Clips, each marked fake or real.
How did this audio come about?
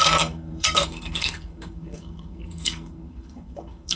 fake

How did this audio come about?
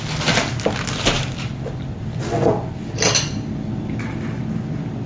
real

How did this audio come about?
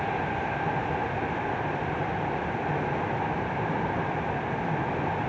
real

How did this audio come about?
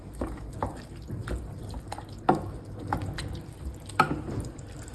real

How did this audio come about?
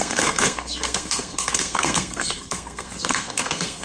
fake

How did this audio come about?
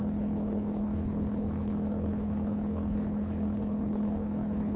fake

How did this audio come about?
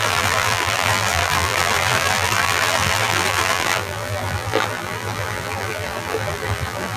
fake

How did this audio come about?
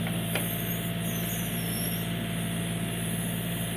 real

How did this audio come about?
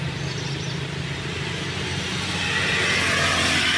real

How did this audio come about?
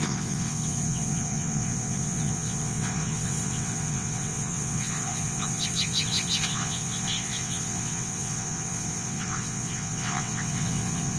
fake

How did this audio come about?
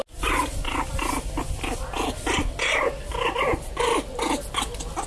real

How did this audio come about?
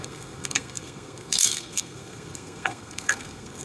fake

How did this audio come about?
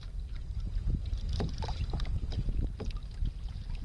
real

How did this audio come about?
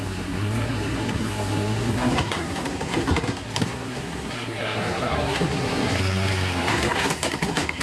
fake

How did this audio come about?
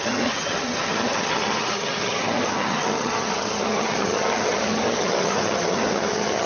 fake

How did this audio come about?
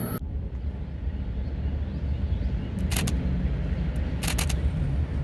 real